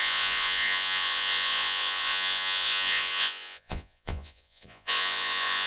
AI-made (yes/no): yes